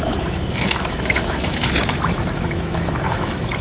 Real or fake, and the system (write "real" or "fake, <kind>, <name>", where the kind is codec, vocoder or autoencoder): fake, autoencoder, DAC-VAE